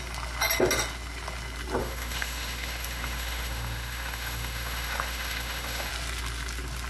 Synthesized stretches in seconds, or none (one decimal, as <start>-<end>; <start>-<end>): 1.8-5.9